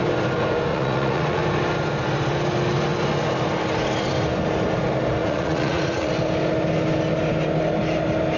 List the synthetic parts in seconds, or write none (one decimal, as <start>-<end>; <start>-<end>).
0.7-1.4; 5.2-6.1